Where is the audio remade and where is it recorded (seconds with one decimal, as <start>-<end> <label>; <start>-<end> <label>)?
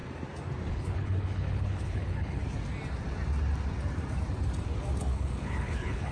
0.0-0.7 recorded; 0.7-2.4 remade; 2.4-5.0 recorded; 5.0-6.1 remade